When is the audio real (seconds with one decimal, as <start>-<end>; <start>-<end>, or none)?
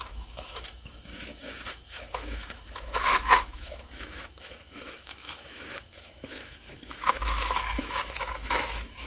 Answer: none